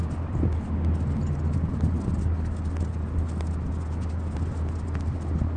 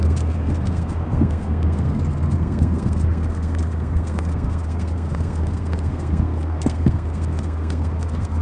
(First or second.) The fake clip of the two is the second